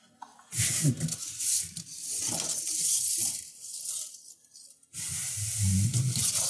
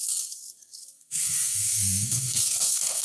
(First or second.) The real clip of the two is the first